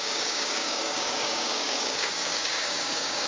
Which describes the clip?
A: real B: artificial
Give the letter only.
B